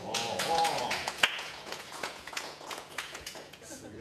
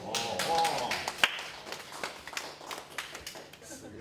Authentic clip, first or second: second